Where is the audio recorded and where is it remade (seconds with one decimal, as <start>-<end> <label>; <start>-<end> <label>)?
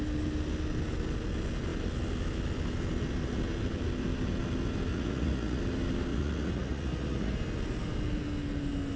0.0-4.9 recorded; 4.9-5.6 remade; 5.6-6.1 recorded; 6.1-7.3 remade; 7.3-9.0 recorded